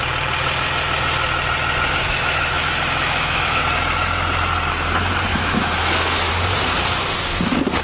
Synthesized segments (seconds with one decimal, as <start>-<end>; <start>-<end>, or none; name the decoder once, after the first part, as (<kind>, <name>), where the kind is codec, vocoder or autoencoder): 2.0-3.6 (autoencoder, DAC-VAE); 5.3-6.3

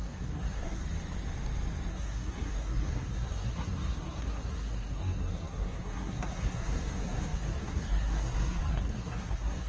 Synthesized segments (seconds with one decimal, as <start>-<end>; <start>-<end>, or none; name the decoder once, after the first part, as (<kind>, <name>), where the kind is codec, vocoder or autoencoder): 0.0-0.8 (codec, SNAC); 1.9-9.7

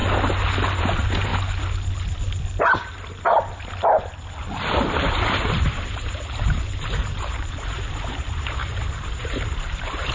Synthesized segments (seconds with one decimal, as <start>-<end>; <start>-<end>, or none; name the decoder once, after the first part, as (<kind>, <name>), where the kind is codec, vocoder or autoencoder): 0.8-1.3 (vocoder, BigVGAN v2); 5.1-10.1

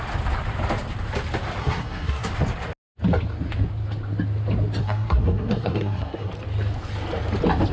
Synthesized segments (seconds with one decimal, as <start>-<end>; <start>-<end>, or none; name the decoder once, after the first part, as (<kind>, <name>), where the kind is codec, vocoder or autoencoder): 1.6-2.3 (codec, SNAC); 4.8-6.3

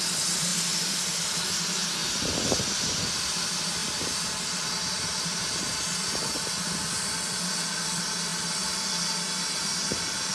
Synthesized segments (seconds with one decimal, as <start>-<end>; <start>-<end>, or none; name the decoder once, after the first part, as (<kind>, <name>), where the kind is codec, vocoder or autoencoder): 2.0-3.0 (vocoder, BigVGAN v2); 3.8-5.6

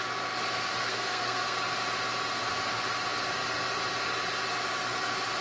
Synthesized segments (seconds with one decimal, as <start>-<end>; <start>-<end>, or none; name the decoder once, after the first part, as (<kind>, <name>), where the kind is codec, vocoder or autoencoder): 0.8-1.6 (codec, SNAC)

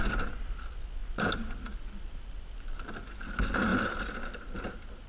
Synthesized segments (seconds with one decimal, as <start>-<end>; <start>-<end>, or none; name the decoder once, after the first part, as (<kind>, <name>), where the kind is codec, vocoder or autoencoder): none

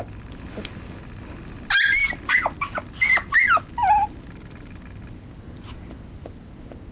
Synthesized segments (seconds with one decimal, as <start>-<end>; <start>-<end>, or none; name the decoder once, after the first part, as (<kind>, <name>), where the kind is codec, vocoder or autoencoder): 2.0-5.0 (vocoder, BigVGAN v2)